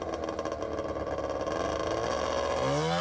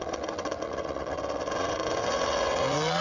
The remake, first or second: second